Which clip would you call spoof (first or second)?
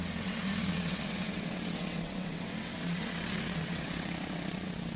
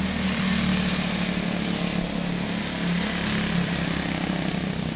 first